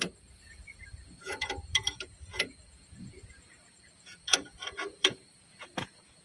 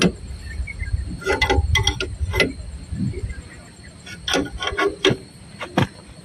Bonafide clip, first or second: second